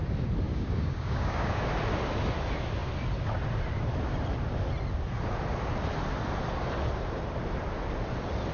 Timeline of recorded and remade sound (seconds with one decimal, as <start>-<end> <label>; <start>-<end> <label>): 0.0-0.5 recorded; 0.5-1.6 remade; 1.6-8.5 recorded